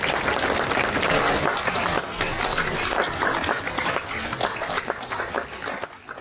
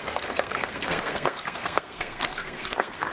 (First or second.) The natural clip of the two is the first